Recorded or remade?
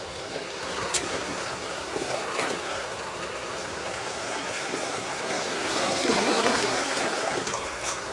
remade